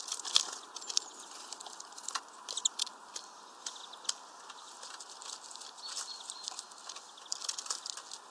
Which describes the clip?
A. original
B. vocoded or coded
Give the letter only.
A